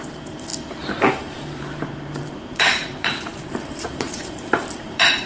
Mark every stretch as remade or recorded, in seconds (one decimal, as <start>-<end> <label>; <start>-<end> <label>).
0.0-0.5 remade; 0.5-1.1 recorded; 1.1-5.3 remade